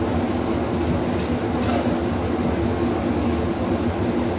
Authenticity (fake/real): real